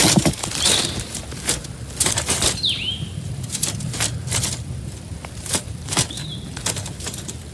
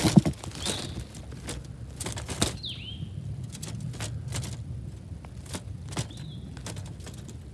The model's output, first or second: first